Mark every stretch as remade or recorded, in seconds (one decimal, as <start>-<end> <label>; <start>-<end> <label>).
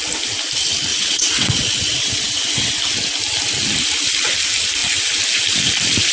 0.0-0.9 recorded; 0.9-2.7 remade; 2.7-6.1 recorded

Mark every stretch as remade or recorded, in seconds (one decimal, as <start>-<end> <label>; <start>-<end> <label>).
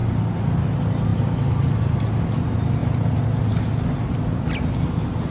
0.0-5.3 recorded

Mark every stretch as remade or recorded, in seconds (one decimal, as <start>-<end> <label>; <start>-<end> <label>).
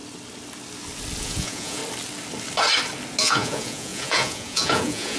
0.0-1.2 recorded; 1.2-1.8 remade; 1.8-3.2 recorded; 3.2-5.2 remade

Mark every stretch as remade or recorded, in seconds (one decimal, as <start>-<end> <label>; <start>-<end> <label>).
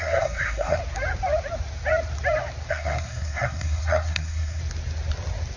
0.0-0.8 remade; 0.8-2.7 recorded; 2.7-4.6 remade; 4.6-5.6 recorded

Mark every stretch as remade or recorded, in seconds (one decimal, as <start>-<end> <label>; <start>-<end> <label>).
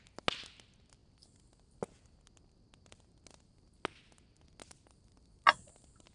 0.0-6.1 recorded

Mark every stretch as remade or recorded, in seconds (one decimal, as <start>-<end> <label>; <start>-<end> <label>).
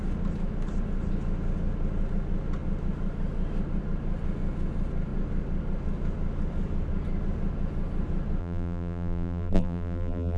0.0-8.4 recorded; 8.4-10.4 remade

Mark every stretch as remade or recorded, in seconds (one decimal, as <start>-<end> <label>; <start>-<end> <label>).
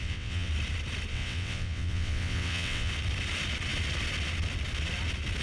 0.0-0.5 remade; 0.5-1.1 recorded; 1.1-2.9 remade; 2.9-5.4 recorded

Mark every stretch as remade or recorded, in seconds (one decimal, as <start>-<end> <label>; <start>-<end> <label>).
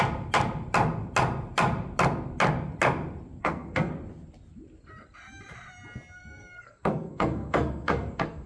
0.0-3.4 recorded; 3.4-3.9 remade; 3.9-6.2 recorded; 6.2-8.5 remade